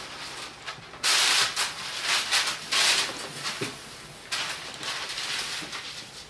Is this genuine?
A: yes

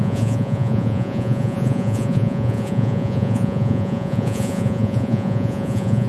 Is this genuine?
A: no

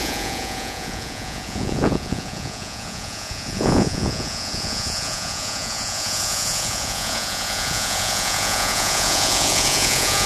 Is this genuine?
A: no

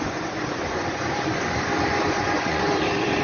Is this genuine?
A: no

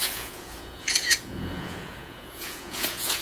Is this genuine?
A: no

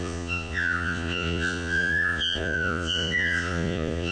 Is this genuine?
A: no